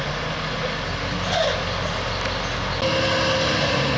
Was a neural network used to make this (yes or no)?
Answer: no